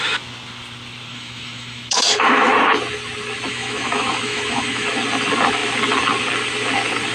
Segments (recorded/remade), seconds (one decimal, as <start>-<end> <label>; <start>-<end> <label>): 0.0-1.1 recorded; 1.1-2.5 remade; 2.5-3.5 recorded; 3.5-4.9 remade; 4.9-7.1 recorded